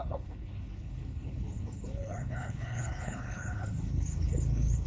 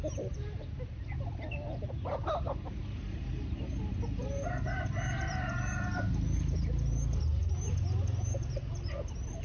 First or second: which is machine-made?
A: first